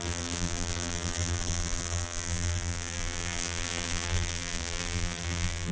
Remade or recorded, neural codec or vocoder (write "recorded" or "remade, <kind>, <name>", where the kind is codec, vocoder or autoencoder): remade, vocoder, BigVGAN v2